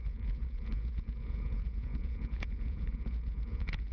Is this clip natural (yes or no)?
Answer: no